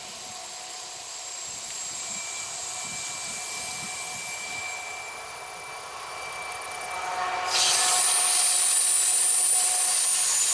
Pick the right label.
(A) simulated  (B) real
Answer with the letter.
B